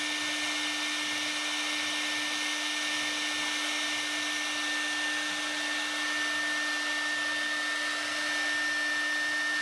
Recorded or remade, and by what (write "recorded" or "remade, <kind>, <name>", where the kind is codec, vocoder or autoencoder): recorded